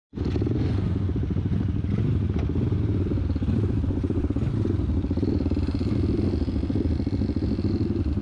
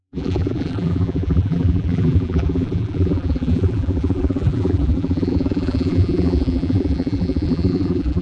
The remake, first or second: second